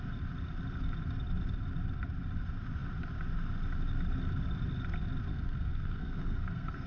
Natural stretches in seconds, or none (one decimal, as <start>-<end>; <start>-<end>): 0.0-5.3